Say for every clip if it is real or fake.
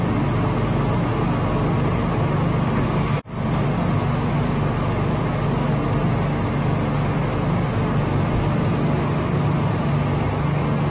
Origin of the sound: real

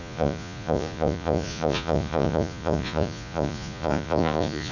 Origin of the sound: fake